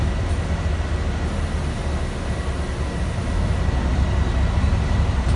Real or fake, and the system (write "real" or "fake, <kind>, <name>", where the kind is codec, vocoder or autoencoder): real